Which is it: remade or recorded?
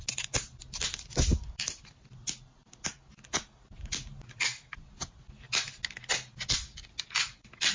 recorded